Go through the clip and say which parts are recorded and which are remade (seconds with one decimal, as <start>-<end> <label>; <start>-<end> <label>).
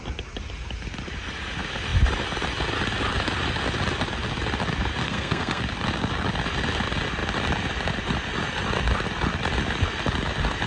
0.0-5.0 recorded; 5.0-5.6 remade; 5.6-10.7 recorded